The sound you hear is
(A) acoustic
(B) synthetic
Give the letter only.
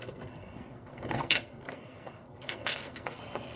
B